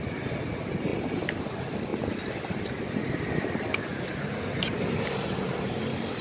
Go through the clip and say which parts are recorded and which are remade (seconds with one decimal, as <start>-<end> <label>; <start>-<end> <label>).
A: 0.0-3.9 recorded; 3.9-5.8 remade; 5.8-6.2 recorded